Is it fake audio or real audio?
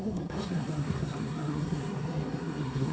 fake